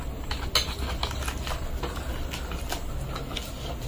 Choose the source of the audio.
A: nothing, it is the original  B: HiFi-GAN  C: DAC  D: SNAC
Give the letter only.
A